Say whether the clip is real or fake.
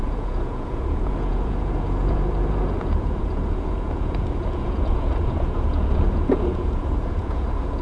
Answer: fake